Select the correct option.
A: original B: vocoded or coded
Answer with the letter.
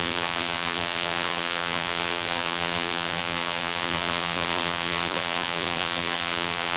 B